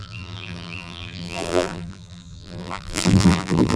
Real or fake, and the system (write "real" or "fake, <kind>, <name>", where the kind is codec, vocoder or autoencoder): fake, vocoder, BigVGAN v2